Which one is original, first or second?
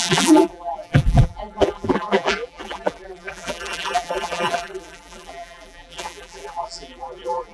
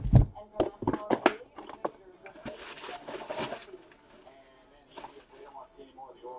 second